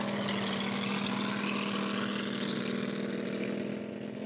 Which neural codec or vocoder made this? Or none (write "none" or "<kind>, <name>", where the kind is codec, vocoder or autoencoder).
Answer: none